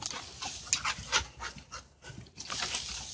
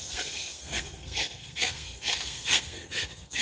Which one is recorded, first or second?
first